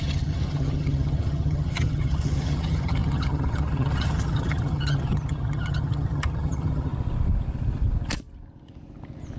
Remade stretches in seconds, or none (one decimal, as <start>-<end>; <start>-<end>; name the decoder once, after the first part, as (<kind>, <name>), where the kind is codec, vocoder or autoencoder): 0.0-6.9 (vocoder, HiFi-GAN)